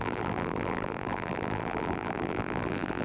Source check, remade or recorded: remade